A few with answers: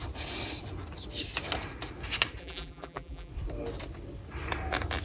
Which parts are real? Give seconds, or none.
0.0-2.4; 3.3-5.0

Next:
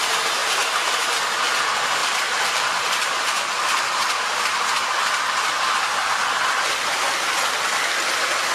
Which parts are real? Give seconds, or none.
0.0-0.4; 1.1-2.0; 4.4-8.5

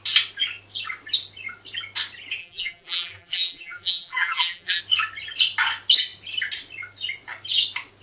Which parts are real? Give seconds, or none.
0.0-2.4; 4.8-8.0

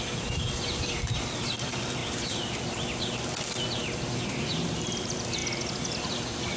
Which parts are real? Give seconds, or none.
2.0-4.4; 5.4-6.1

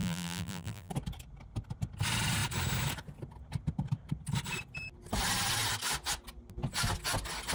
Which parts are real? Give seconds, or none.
0.9-7.5

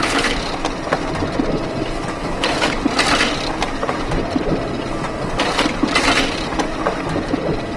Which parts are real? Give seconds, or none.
0.0-1.6; 4.7-7.8

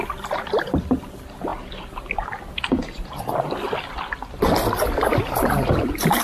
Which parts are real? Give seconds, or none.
1.5-5.2